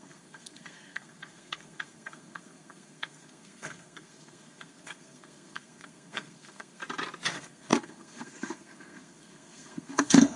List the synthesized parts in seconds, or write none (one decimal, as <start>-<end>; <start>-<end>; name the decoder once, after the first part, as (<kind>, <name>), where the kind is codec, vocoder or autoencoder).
0.0-6.8 (codec, SNAC); 7.3-10.4